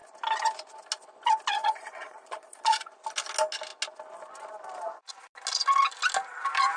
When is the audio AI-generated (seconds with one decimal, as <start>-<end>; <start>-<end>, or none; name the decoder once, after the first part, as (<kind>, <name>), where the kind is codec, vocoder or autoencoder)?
1.6-2.9 (vocoder, Vocos)